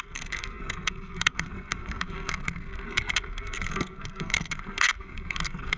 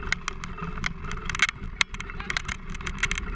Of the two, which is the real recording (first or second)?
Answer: second